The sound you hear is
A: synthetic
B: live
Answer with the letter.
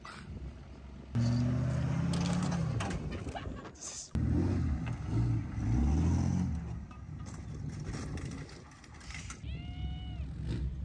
B